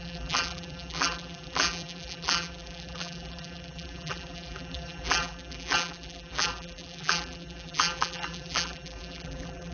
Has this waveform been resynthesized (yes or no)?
yes